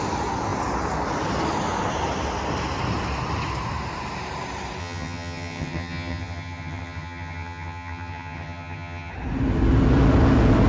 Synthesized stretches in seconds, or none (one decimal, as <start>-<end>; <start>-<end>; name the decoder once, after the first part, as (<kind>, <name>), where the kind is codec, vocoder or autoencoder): 4.8-9.1 (vocoder, HiFi-GAN)